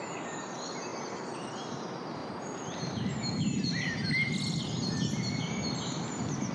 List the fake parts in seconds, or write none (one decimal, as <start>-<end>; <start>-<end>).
0.9-1.5; 2.2-4.1